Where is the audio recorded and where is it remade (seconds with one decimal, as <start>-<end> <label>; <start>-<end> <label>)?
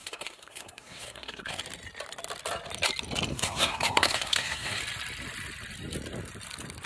0.0-1.6 remade; 1.6-3.3 recorded; 3.3-4.8 remade; 4.8-6.9 recorded